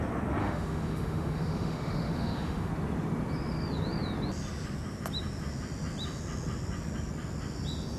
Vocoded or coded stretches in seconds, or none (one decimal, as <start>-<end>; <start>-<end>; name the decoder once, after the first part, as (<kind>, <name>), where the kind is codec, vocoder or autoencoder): 0.4-2.7 (autoencoder, DAC-VAE)

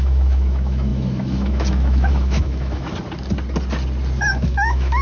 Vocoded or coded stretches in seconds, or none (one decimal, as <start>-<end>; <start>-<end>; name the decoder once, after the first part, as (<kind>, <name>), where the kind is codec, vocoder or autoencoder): 0.0-2.9 (autoencoder, DAC-VAE); 4.3-5.0

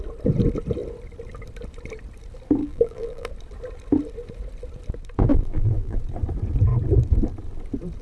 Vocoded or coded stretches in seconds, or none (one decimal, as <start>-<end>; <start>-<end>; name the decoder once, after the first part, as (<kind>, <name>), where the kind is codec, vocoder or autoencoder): 2.6-3.3 (vocoder, BigVGAN v2); 5.3-6.0

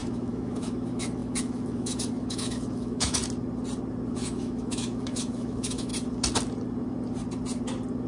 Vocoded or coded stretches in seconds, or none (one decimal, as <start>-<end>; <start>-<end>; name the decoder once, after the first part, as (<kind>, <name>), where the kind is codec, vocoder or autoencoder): 0.0-3.2 (autoencoder, DAC-VAE); 4.1-5.9

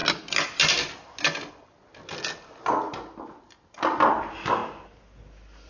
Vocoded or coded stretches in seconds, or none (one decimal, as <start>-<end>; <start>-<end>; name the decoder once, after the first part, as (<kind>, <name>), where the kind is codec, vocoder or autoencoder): none

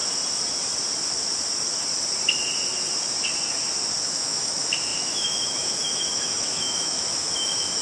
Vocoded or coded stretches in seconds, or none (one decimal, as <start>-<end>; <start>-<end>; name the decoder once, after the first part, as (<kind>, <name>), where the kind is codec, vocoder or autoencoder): 4.0-7.8 (autoencoder, DAC-VAE)

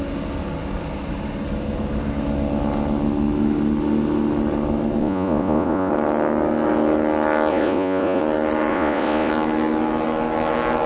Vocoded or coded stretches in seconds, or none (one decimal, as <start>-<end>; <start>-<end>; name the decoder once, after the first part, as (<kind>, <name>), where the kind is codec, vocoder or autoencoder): 5.0-5.9 (vocoder, Vocos); 7.5-8.2; 8.7-9.3